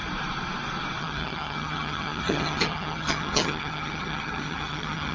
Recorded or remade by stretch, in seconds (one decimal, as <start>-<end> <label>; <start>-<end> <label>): 0.0-1.0 recorded; 1.0-5.1 remade